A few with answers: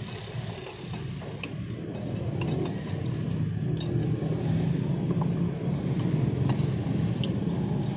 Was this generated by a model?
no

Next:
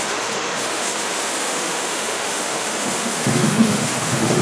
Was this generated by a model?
yes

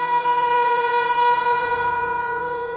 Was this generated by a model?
yes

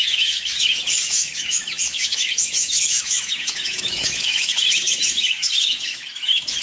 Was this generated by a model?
yes